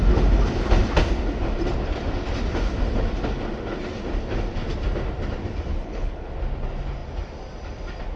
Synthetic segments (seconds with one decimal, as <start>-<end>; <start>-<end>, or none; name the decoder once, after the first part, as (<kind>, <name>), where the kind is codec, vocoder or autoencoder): 5.7-6.3 (codec, HILCodec)